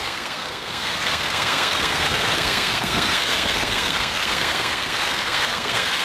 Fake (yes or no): yes